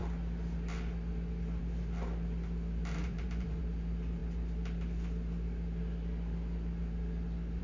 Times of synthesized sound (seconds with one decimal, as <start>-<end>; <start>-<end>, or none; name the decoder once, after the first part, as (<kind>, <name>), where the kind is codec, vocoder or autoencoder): 3.0-3.6 (vocoder, BigVGAN v2)